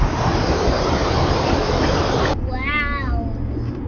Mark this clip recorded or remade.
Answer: recorded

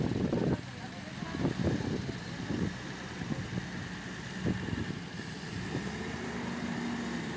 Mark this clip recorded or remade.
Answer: recorded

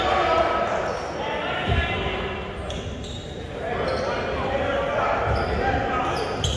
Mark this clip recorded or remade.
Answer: recorded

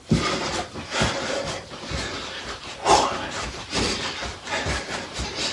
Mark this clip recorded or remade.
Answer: recorded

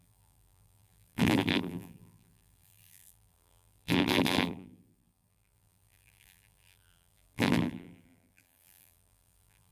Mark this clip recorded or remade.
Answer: remade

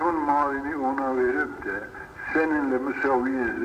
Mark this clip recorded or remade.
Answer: recorded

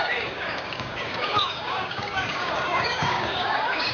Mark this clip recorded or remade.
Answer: remade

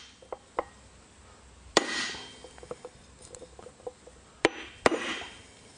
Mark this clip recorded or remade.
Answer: recorded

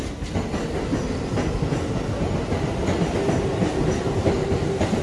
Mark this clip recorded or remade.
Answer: recorded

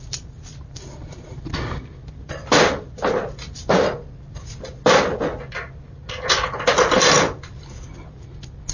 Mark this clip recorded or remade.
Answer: recorded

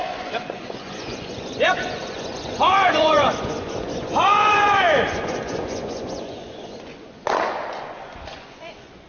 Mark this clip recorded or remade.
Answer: remade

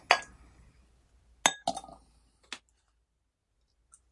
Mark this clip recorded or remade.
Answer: recorded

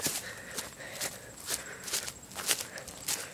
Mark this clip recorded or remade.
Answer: recorded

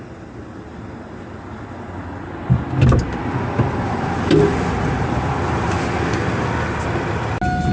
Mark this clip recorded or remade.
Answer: recorded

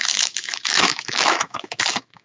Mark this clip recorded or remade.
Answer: remade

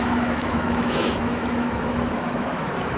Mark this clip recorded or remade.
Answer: remade